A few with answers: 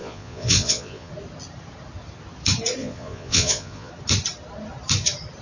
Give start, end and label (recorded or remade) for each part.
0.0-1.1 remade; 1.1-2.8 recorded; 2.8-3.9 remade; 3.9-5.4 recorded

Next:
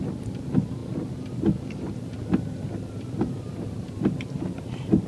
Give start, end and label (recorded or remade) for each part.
0.0-5.1 recorded

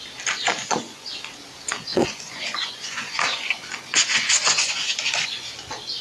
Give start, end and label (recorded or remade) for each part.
0.0-0.5 recorded; 0.5-1.1 remade; 1.1-1.9 recorded; 1.9-5.5 remade; 5.5-6.0 recorded

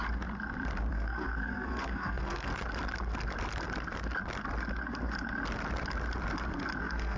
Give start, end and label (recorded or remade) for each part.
0.0-0.9 recorded; 0.9-2.5 remade; 2.5-6.8 recorded; 6.8-7.2 remade

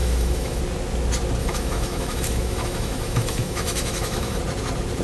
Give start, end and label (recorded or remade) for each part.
0.0-0.6 remade; 0.6-1.4 recorded; 1.4-4.4 remade; 4.4-5.0 recorded

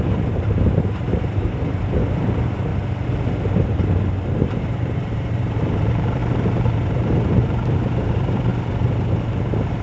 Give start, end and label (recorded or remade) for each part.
0.0-2.7 remade; 2.7-4.3 recorded; 4.3-8.5 remade; 8.5-9.1 recorded; 9.1-9.8 remade